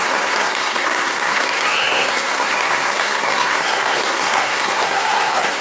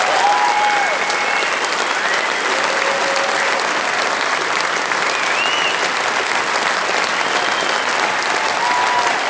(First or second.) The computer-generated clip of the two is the first